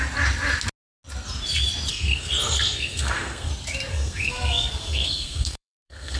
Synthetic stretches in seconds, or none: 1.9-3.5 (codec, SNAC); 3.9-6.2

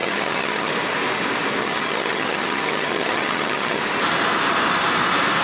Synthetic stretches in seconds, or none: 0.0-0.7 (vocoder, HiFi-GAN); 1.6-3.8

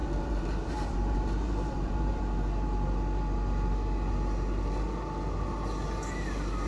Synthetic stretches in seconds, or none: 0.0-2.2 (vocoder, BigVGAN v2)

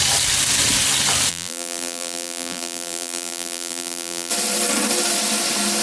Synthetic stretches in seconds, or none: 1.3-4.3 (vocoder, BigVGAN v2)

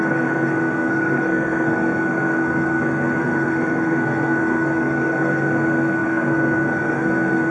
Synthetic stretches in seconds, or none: 0.0-7.5 (codec, SNAC)